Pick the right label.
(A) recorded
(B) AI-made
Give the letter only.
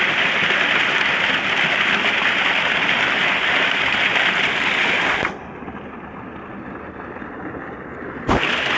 A